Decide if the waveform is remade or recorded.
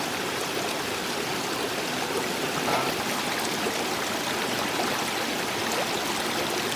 recorded